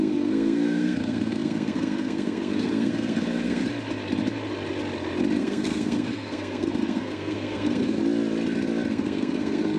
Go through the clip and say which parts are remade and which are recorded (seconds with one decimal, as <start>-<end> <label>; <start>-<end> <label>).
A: 0.0-3.6 remade; 3.6-5.4 recorded; 5.4-8.0 remade; 8.0-8.9 recorded; 8.9-9.8 remade